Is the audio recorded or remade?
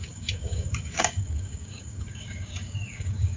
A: remade